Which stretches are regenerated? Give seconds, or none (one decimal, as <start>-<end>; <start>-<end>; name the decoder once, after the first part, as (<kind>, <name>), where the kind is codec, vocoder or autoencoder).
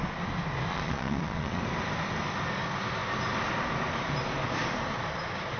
0.7-1.6 (vocoder, Vocos)